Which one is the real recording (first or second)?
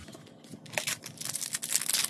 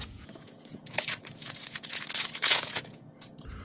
first